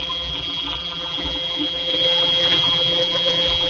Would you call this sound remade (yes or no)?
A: yes